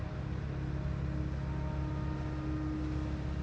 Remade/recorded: recorded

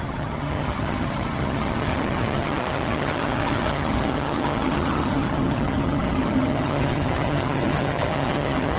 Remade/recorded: remade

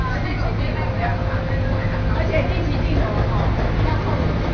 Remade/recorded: recorded